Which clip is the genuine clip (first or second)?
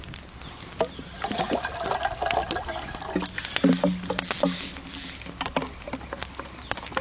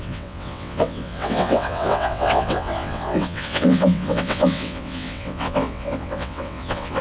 first